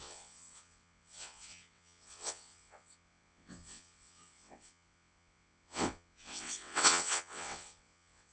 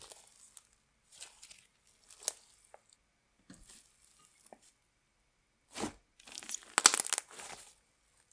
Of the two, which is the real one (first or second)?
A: second